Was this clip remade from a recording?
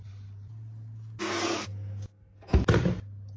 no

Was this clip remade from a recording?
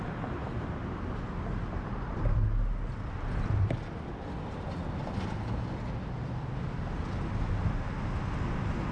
no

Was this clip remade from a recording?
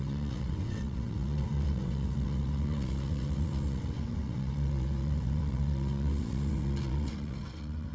yes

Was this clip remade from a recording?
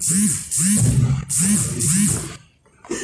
no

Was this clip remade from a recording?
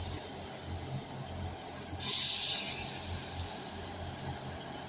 no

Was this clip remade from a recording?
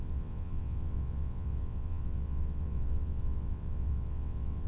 yes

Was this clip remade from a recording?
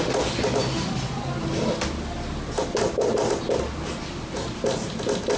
no